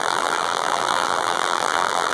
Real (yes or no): no